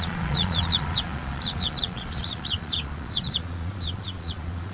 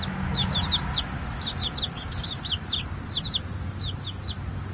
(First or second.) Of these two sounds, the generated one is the first